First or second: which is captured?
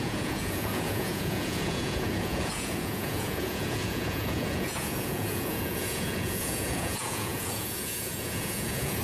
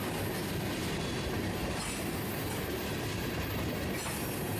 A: second